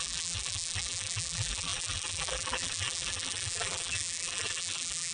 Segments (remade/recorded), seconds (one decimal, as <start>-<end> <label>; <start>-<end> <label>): 0.0-5.1 remade

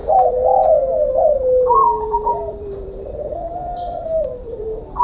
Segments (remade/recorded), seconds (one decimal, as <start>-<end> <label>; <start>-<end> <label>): 0.0-0.9 recorded; 0.9-5.0 remade

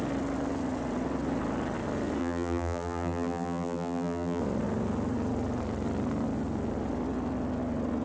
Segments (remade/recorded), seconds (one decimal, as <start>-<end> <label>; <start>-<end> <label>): 0.0-2.2 recorded; 2.2-4.4 remade; 4.4-8.0 recorded

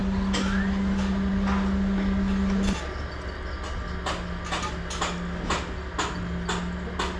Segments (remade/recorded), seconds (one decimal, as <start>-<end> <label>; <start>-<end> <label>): 0.0-7.2 recorded

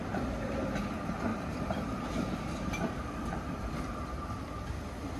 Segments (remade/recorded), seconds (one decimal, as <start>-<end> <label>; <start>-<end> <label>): 0.0-1.3 recorded; 1.3-4.4 remade; 4.4-5.2 recorded

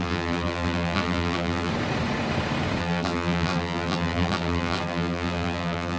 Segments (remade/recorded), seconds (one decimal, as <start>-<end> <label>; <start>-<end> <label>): 0.0-1.7 remade; 1.7-2.8 recorded; 2.8-6.0 remade